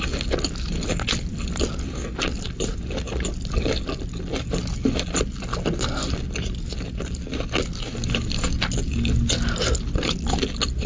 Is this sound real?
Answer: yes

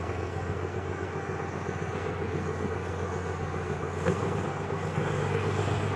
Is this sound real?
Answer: no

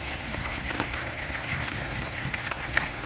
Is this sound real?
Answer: no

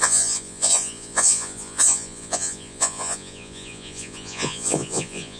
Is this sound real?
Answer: no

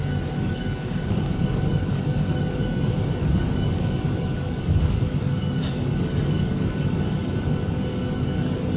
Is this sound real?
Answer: no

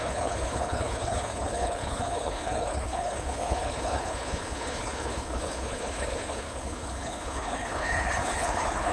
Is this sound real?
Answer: no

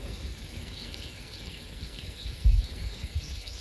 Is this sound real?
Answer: no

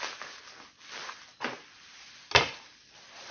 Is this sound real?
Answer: yes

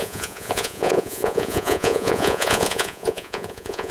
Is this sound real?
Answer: no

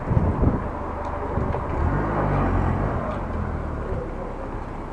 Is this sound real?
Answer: yes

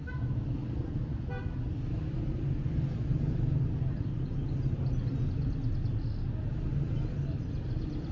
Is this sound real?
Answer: yes